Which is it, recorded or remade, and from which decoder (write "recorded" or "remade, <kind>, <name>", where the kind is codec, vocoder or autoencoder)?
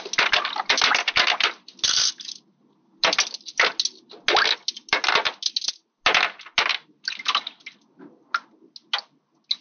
recorded